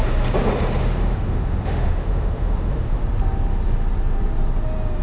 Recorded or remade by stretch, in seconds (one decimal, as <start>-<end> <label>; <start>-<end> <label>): 0.0-0.8 recorded; 0.8-3.0 remade; 3.0-5.0 recorded